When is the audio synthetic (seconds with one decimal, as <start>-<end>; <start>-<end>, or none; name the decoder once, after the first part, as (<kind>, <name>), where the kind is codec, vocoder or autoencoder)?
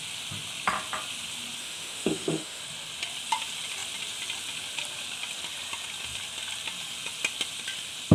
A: 1.6-2.6 (autoencoder, DAC-VAE)